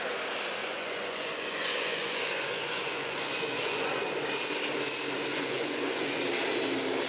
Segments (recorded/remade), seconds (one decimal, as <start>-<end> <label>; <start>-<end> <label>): 0.0-0.6 recorded; 0.6-3.9 remade; 3.9-5.3 recorded; 5.3-6.2 remade; 6.2-7.1 recorded